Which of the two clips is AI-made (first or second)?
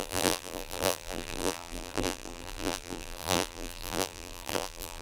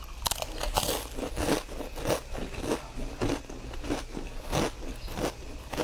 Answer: first